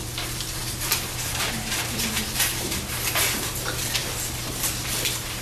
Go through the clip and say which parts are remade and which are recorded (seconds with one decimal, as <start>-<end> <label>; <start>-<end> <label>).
0.0-0.6 recorded; 0.6-3.8 remade; 3.8-5.4 recorded